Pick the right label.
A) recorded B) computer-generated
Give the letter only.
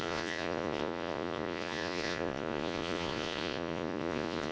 B